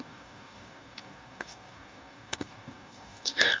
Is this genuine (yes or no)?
no